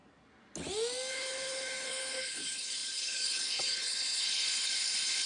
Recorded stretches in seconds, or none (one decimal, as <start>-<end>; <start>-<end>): 0.0-1.1